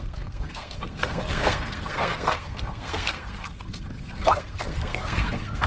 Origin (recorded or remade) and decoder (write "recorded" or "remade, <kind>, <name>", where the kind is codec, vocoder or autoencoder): remade, codec, SNAC